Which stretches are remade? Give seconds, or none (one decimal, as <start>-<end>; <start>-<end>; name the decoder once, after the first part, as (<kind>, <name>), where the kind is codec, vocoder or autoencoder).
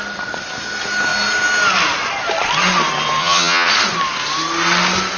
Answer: 3.2-3.7 (vocoder, HiFi-GAN)